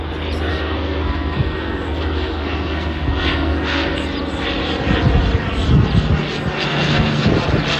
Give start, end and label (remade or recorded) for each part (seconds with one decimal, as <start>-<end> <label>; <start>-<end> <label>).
0.0-0.5 recorded; 0.5-4.0 remade; 4.0-6.7 recorded; 6.7-7.3 remade; 7.3-7.8 recorded